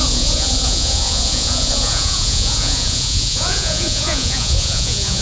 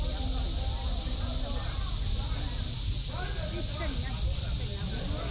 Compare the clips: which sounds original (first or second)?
second